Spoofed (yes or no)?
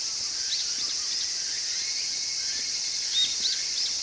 no